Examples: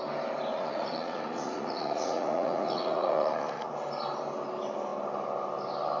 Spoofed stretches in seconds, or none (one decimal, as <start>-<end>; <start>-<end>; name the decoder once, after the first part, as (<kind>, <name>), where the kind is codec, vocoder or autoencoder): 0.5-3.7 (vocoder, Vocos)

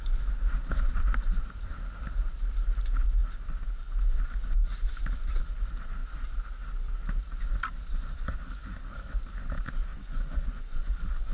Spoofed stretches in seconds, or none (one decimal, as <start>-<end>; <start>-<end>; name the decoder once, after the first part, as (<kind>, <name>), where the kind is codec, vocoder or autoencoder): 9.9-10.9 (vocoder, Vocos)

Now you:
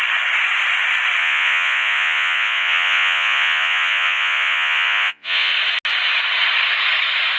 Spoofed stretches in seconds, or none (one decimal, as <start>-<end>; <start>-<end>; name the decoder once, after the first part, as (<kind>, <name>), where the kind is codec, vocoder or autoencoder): 1.2-5.5 (vocoder, Vocos)

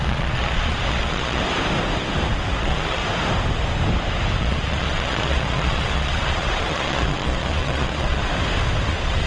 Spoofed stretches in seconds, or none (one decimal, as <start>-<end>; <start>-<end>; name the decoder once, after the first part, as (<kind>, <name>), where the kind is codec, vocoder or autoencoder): 0.0-1.4 (vocoder, Vocos); 2.6-3.0; 4.4-8.2; 8.9-9.3